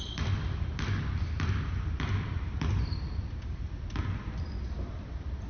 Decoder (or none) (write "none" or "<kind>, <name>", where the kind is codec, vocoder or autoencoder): none